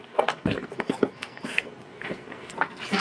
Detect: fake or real fake